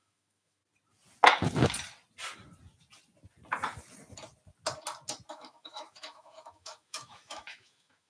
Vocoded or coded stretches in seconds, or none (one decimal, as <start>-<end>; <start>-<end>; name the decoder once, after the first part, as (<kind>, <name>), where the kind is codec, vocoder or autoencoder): 0.0-0.6 (autoencoder, DAC-VAE); 5.3-8.1